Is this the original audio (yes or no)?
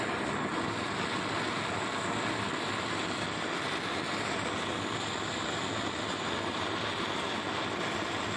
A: yes